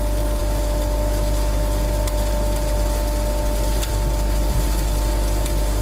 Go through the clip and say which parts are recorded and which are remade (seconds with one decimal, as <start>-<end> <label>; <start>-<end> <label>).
0.0-5.8 recorded